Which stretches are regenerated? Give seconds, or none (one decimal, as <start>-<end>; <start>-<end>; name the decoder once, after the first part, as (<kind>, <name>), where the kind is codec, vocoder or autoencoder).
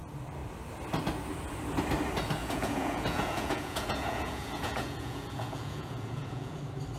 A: 2.4-6.6 (vocoder, Vocos)